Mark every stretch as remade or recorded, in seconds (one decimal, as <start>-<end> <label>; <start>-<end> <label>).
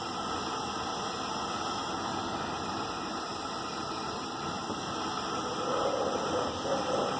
0.0-7.2 recorded